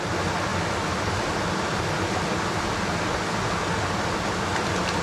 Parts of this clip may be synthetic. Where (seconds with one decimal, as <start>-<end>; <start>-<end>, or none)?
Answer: none